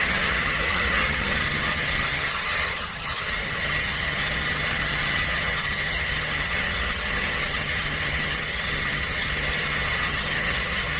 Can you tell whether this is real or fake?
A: fake